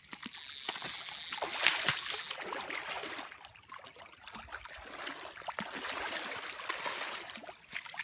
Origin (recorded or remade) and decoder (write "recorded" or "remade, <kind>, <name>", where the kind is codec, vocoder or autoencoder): recorded